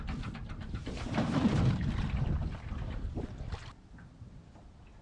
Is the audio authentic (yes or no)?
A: no